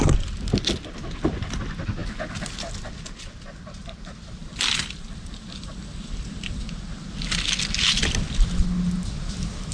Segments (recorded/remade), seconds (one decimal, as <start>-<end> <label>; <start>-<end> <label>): 0.0-4.4 recorded; 4.4-6.6 remade; 6.6-9.7 recorded